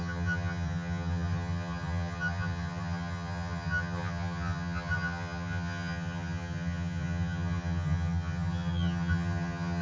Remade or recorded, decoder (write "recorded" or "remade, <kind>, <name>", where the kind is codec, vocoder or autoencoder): remade, vocoder, HiFi-GAN